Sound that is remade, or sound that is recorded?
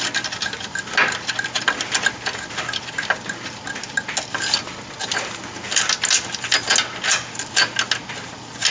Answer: recorded